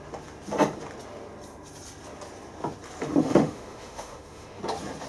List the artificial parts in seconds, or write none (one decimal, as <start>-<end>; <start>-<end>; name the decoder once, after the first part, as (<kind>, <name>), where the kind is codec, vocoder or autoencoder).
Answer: 3.2-4.6 (autoencoder, DAC-VAE)